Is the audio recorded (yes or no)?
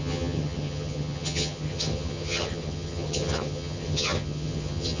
no